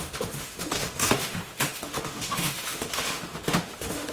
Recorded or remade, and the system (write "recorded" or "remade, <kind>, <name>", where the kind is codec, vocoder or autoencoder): remade, autoencoder, DAC-VAE